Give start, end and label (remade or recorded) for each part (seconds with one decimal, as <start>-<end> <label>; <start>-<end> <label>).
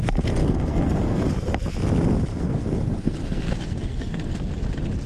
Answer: 0.0-0.4 recorded; 0.4-1.3 remade; 1.3-2.3 recorded; 2.3-4.6 remade; 4.6-5.1 recorded